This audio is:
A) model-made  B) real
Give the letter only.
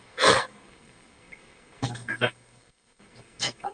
A